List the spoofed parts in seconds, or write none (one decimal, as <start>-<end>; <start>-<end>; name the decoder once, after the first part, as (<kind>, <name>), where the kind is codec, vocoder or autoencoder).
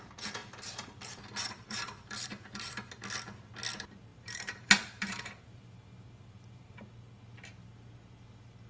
0.4-2.9 (vocoder, BigVGAN v2); 4.1-6.8